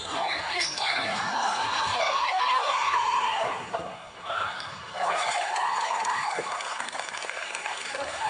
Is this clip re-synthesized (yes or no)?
yes